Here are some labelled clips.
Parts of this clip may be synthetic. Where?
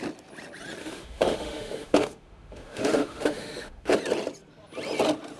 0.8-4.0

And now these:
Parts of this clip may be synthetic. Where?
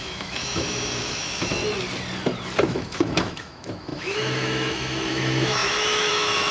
0.0-1.5; 2.6-6.5